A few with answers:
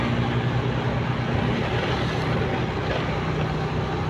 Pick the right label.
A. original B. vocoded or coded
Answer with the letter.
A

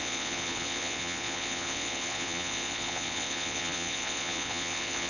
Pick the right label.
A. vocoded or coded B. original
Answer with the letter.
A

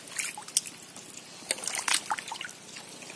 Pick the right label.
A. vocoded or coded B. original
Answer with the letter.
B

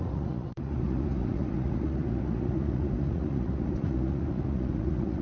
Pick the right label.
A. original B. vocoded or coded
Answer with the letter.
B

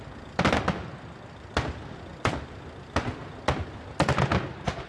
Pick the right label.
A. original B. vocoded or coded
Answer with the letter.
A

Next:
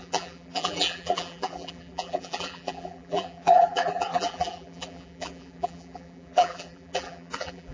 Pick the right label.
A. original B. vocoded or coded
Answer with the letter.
B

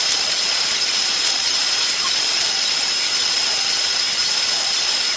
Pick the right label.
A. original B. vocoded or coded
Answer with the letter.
A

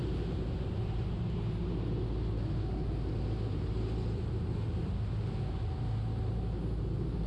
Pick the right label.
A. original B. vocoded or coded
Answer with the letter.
A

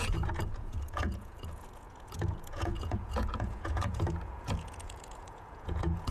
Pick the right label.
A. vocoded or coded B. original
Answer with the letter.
A